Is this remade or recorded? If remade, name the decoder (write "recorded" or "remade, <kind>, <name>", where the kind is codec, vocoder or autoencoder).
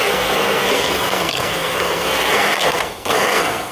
remade, codec, SNAC